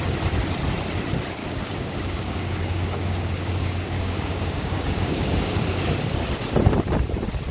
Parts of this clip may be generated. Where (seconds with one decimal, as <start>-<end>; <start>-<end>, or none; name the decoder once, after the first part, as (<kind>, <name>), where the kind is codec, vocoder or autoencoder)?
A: 1.4-5.9 (codec, DAC)